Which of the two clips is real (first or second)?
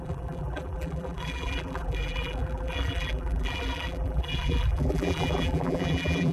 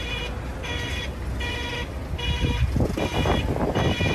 second